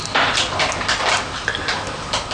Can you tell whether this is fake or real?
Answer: real